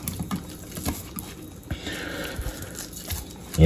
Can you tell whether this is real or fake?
real